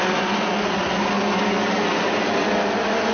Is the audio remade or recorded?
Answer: recorded